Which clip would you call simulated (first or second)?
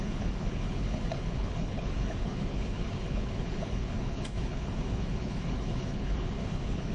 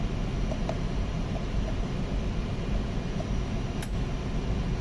first